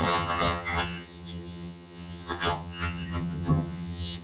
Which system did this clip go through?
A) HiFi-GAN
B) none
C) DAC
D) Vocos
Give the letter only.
A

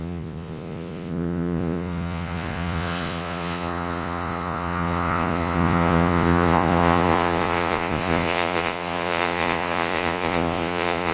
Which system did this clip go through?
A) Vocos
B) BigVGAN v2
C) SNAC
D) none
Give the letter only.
A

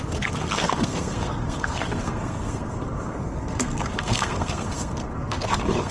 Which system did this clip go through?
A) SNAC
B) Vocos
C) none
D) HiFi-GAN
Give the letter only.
A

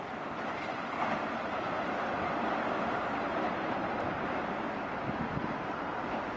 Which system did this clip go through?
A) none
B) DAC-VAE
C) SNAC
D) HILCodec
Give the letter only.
A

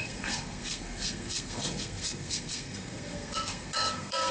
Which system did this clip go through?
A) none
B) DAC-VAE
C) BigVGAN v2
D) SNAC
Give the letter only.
D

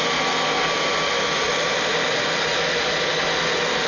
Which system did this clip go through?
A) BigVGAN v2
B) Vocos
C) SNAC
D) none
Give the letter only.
D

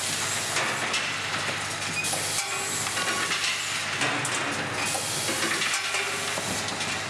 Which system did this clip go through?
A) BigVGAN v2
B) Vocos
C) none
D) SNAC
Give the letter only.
C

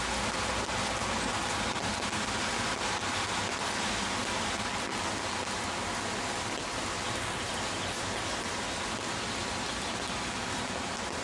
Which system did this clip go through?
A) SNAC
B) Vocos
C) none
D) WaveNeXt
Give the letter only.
C